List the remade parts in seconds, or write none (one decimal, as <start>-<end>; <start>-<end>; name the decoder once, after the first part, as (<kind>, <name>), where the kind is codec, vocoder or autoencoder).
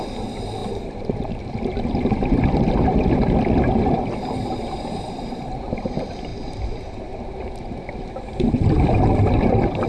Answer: 0.6-4.0 (vocoder, BigVGAN v2); 6.3-7.9